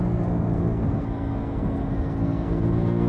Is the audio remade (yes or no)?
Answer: yes